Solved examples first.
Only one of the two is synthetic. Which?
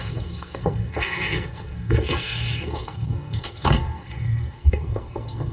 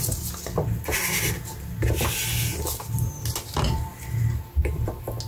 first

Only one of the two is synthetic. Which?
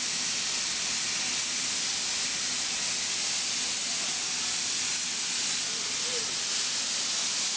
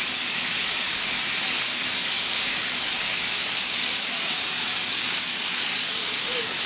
second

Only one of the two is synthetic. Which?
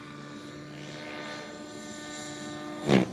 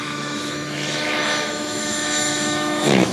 second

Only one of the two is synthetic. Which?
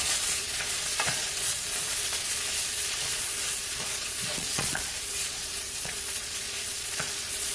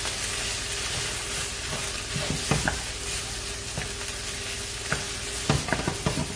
first